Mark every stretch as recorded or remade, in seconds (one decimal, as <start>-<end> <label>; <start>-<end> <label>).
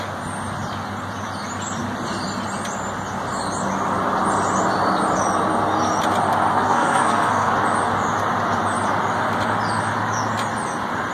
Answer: 0.0-6.5 recorded; 6.5-7.5 remade; 7.5-11.1 recorded